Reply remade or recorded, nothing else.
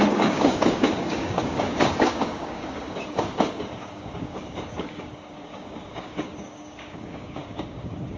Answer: remade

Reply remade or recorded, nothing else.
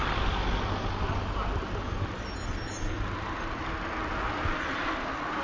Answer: recorded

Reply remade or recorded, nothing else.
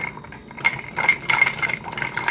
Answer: recorded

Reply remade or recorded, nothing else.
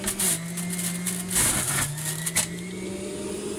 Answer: recorded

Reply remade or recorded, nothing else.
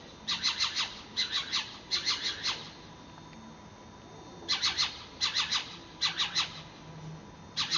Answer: recorded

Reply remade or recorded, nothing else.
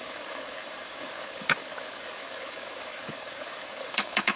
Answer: remade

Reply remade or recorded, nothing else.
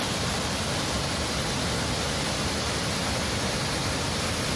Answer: recorded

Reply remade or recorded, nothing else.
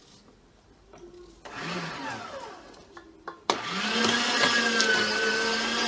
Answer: recorded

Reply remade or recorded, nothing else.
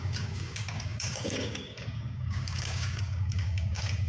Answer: remade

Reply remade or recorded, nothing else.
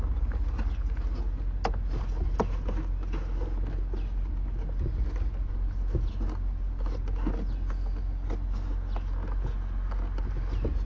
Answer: recorded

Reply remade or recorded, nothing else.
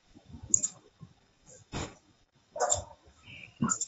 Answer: remade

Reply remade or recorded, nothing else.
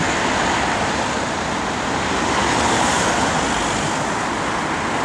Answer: recorded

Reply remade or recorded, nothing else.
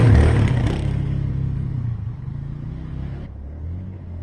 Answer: remade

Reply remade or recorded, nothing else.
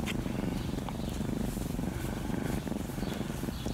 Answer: recorded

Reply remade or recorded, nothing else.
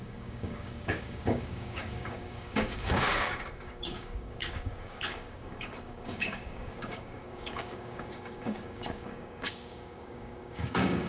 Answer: remade